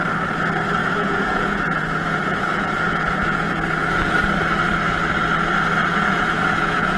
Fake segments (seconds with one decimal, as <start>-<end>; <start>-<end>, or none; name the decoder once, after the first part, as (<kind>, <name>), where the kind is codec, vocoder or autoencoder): 0.8-3.5 (vocoder, Vocos); 5.8-7.0